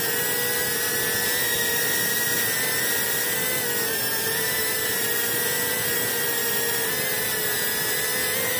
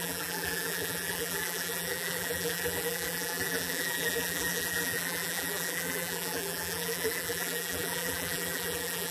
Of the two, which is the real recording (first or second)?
first